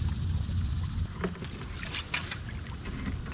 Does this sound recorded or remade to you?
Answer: recorded